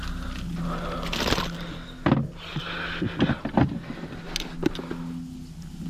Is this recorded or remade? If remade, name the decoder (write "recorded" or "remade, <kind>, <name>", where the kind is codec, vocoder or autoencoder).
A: recorded